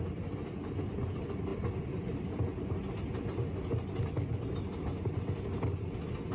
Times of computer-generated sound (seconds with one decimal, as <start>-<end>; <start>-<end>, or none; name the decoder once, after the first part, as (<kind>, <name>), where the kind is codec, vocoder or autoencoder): none